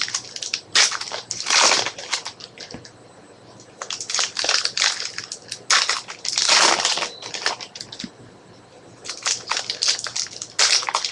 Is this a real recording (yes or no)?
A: yes